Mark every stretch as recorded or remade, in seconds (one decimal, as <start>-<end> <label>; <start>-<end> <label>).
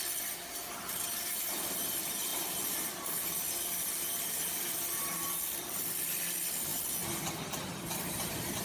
0.0-6.7 remade; 6.7-7.8 recorded; 7.8-8.6 remade